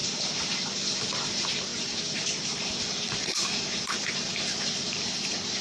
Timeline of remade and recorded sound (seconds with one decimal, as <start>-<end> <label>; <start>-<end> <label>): 0.0-5.6 remade